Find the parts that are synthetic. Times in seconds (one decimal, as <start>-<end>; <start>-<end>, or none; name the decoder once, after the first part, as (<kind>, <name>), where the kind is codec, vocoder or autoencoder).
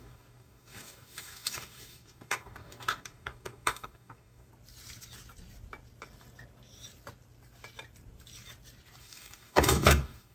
0.0-4.5 (codec, DAC); 9.0-10.3